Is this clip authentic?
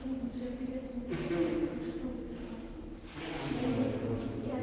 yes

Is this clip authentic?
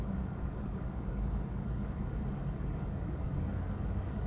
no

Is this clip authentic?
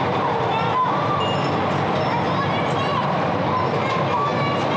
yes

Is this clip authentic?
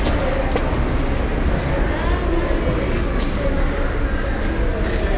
yes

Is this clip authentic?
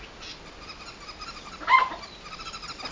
yes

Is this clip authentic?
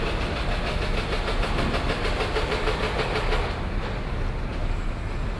yes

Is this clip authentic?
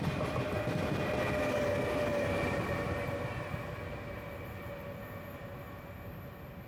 yes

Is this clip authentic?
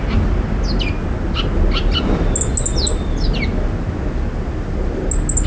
yes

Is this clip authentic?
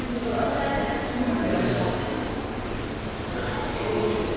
yes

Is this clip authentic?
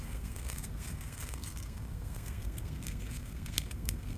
no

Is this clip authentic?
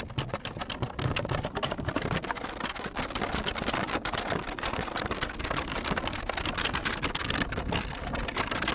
yes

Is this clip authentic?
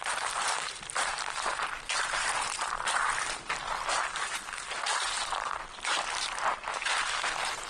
no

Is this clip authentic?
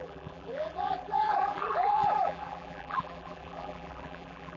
no